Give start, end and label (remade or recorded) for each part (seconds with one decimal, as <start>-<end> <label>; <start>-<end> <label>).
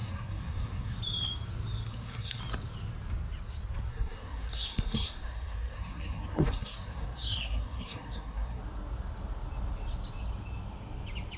0.0-1.0 remade; 1.0-1.9 recorded; 1.9-2.4 remade; 2.4-3.9 recorded; 3.9-8.6 remade; 8.6-11.4 recorded